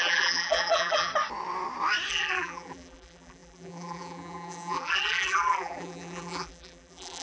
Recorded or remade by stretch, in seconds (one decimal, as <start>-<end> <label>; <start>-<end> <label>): 0.0-1.1 remade; 1.1-2.1 recorded; 2.1-7.2 remade